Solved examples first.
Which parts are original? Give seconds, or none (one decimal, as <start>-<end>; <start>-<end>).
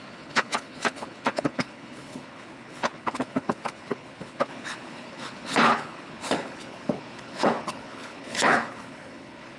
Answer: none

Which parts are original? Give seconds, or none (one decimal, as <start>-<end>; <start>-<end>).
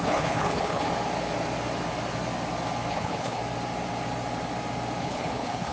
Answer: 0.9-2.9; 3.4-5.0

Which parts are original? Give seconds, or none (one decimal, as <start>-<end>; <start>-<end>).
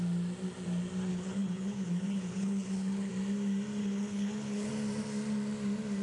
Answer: 0.0-1.1; 3.1-3.8; 4.7-6.0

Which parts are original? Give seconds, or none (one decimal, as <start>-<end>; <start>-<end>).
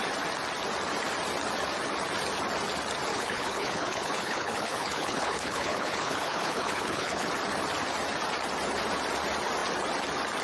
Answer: 0.0-3.1; 7.3-10.4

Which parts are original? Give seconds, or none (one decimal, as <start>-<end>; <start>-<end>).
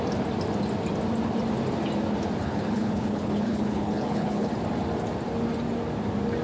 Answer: 0.0-2.4; 4.5-6.4